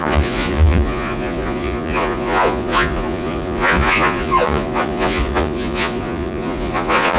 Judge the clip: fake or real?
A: fake